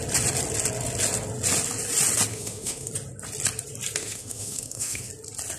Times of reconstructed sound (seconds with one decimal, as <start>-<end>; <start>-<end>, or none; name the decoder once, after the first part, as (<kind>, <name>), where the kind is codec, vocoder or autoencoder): 2.3-2.9 (autoencoder, DAC-VAE); 4.0-5.1